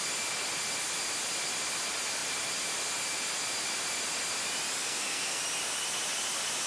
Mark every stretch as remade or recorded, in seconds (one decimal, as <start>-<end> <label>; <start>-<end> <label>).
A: 0.0-4.8 recorded; 4.8-5.4 remade; 5.4-6.7 recorded